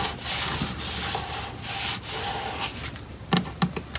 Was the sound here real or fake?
real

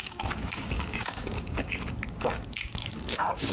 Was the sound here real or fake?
fake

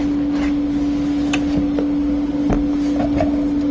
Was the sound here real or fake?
real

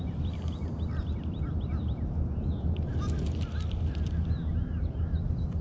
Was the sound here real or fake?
real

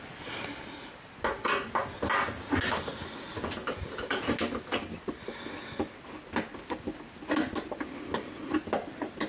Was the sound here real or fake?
real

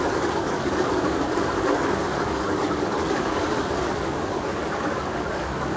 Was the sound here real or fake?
fake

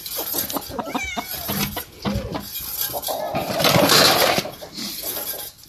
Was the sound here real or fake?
real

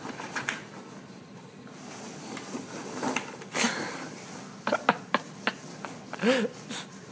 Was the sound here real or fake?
real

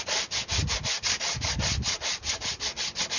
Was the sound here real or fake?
real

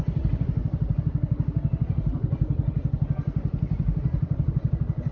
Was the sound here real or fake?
real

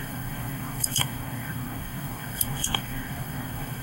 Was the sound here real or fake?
fake